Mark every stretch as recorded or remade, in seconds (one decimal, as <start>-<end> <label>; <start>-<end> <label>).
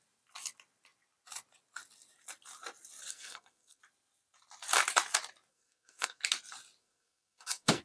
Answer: 0.0-3.1 recorded; 3.1-3.8 remade; 3.8-5.5 recorded; 5.5-6.2 remade; 6.2-6.8 recorded; 6.8-7.8 remade